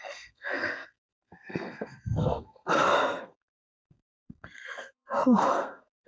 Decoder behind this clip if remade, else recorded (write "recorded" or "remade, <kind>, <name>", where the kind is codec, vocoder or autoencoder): remade, codec, SNAC